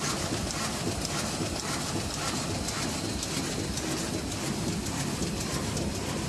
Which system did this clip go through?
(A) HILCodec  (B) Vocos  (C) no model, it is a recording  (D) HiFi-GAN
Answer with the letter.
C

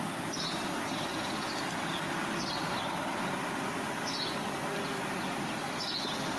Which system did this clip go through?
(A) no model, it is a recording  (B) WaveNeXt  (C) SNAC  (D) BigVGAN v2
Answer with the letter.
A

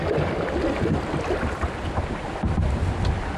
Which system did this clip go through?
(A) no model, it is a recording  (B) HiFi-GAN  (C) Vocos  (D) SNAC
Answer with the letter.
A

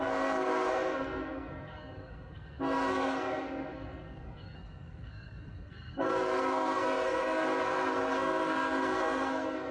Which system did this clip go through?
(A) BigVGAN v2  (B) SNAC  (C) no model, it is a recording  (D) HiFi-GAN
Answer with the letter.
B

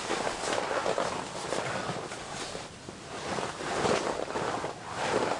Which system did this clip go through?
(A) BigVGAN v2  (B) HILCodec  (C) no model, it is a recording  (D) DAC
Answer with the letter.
C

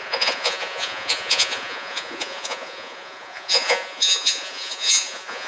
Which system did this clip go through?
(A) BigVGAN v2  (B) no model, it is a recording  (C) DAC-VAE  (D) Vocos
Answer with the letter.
D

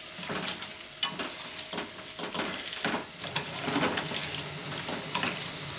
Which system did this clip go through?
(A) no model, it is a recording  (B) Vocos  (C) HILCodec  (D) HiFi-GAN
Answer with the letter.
A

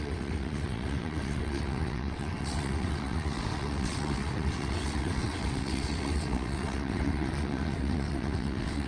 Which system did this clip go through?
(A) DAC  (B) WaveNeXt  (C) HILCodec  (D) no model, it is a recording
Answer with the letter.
B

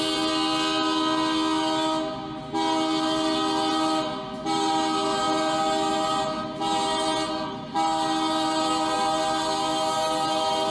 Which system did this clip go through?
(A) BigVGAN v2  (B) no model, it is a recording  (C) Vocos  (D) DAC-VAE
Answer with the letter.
B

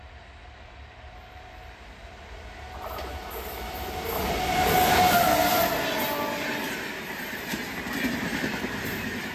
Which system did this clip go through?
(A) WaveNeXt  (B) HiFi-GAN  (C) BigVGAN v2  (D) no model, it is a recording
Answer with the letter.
D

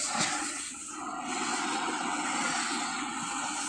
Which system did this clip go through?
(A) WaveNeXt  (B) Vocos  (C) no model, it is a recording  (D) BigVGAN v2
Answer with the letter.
A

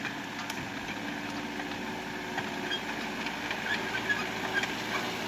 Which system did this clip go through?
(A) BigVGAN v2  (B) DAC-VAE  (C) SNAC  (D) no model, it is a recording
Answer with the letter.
D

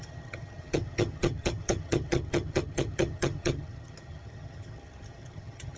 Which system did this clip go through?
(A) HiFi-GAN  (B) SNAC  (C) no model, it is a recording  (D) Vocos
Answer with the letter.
A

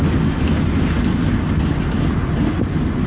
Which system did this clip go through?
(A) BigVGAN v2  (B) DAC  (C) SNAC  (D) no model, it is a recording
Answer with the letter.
D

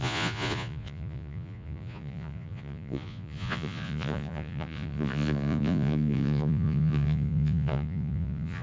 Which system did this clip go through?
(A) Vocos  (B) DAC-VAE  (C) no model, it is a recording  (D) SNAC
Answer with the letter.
A